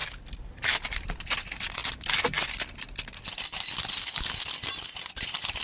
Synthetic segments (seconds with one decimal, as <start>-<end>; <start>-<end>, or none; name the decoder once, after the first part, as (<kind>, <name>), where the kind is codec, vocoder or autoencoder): none